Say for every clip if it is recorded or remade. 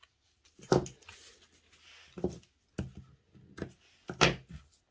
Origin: recorded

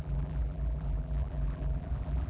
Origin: remade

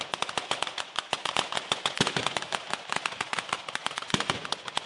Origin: remade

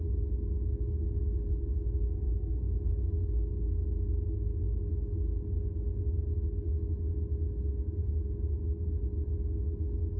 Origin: recorded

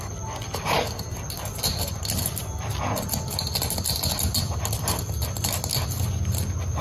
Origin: recorded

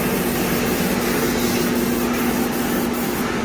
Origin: recorded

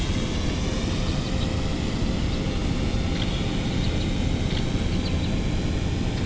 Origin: recorded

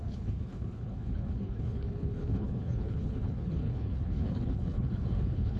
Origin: remade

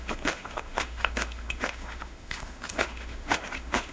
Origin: remade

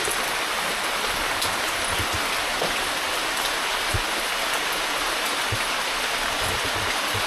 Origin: recorded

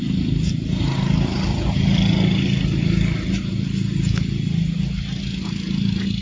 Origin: recorded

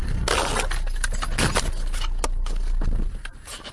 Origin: recorded